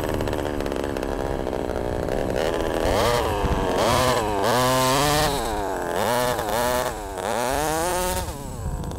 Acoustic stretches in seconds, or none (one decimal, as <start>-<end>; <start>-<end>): 0.0-1.1; 1.8-2.2; 4.1-9.0